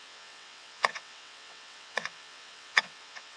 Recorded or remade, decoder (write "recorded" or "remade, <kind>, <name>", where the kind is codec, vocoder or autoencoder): remade, vocoder, WaveNeXt